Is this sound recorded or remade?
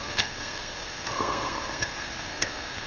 remade